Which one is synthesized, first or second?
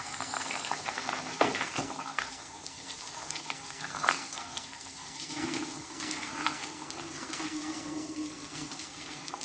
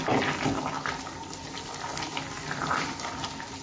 first